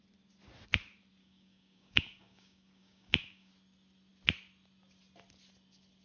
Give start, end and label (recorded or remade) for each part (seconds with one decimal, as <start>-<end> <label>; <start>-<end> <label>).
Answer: 0.0-1.2 recorded; 1.2-3.5 remade; 3.5-6.0 recorded